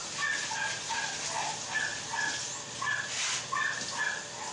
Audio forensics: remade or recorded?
recorded